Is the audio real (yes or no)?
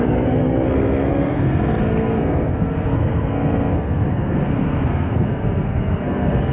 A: no